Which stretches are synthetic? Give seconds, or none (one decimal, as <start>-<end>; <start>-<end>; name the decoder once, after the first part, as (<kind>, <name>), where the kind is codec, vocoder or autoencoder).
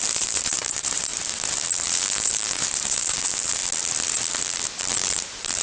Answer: 0.0-1.1 (vocoder, BigVGAN v2); 1.8-3.6; 4.8-5.6